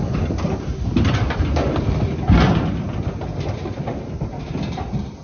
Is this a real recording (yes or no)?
yes